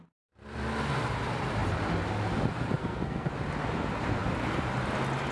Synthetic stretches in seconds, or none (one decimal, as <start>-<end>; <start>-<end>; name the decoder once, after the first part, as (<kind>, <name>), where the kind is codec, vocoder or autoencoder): 2.8-3.3 (codec, SNAC)